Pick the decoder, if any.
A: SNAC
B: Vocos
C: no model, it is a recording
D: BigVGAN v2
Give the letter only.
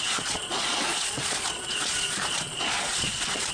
B